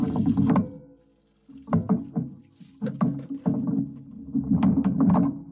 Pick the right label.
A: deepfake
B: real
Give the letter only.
B